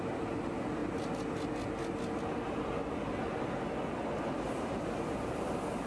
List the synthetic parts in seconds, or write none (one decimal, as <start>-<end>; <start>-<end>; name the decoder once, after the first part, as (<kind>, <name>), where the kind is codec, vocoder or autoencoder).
none